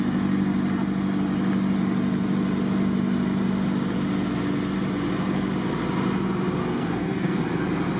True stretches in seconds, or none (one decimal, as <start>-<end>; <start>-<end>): 0.0-6.6; 7.4-8.0

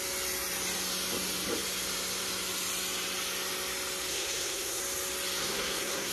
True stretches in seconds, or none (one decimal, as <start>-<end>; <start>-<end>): 0.0-4.1; 4.8-5.4

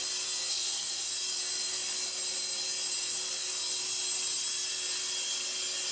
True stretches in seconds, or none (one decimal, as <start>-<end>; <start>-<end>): 0.0-0.5; 1.1-5.9

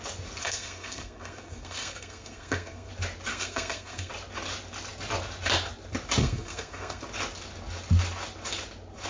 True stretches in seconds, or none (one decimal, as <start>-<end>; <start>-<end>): 0.0-0.4; 2.9-3.3; 4.1-6.2; 7.0-9.1

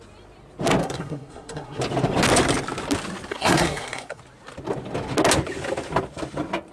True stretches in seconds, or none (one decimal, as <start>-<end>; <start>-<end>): 0.0-0.8; 1.8-3.3; 4.2-6.7

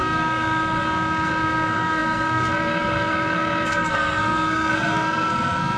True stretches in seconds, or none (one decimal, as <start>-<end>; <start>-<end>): none

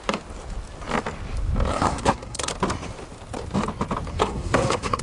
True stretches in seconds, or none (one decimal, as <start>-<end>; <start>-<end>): 0.0-1.7; 2.5-4.1

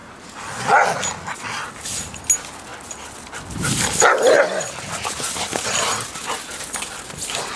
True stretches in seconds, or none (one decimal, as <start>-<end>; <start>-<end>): 0.0-7.6